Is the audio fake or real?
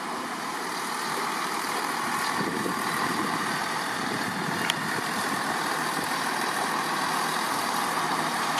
fake